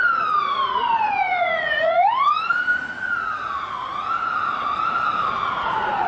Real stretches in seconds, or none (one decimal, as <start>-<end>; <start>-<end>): none